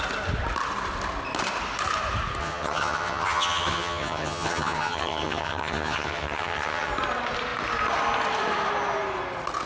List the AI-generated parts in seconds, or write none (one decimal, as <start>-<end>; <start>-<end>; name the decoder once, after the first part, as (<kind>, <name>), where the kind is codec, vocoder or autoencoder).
2.4-6.9 (vocoder, HiFi-GAN)